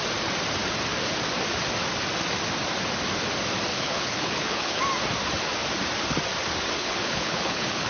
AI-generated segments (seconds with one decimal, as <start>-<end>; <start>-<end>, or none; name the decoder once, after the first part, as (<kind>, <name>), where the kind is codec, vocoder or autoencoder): 3.7-4.8 (codec, HILCodec); 6.8-7.9